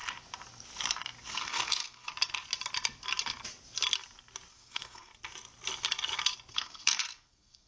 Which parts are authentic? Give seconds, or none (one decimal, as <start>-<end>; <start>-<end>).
0.0-1.3; 2.1-4.5; 5.1-6.5